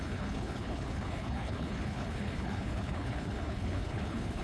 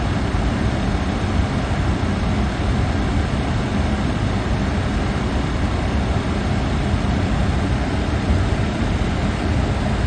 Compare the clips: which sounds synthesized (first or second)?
first